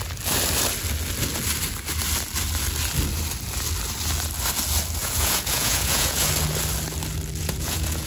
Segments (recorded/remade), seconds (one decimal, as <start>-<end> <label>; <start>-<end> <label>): 0.0-5.0 recorded; 5.0-6.3 remade; 6.3-7.4 recorded; 7.4-8.1 remade